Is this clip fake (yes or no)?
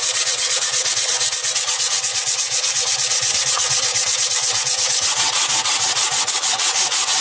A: yes